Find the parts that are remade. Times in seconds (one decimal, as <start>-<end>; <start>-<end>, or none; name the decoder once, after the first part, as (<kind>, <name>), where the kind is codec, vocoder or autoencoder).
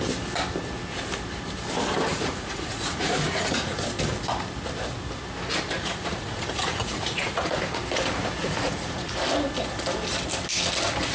2.1-3.8 (vocoder, Vocos); 5.8-7.8; 8.4-9.1